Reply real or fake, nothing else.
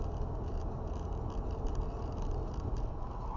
real